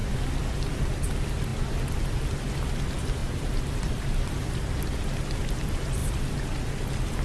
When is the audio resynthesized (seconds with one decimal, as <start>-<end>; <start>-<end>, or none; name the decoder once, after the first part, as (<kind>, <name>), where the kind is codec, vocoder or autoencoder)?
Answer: 3.2-4.7 (vocoder, BigVGAN v2); 6.0-6.6